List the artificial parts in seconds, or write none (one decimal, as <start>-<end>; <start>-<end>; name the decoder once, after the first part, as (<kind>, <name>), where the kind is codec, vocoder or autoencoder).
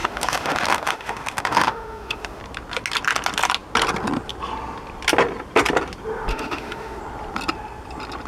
0.0-2.4 (autoencoder, DAC-VAE); 6.3-7.0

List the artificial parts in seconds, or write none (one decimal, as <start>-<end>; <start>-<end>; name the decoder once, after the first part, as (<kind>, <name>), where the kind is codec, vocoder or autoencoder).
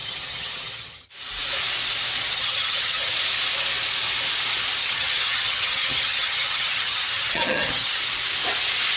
0.0-1.1 (vocoder, HiFi-GAN); 2.3-3.1; 4.8-8.0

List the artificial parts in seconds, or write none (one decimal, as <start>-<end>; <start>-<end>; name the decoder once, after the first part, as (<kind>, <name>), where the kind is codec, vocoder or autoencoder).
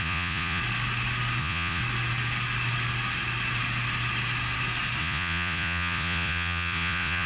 0.0-0.6 (vocoder, Vocos); 1.4-1.8; 5.0-7.3